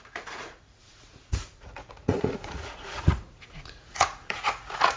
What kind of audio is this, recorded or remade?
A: remade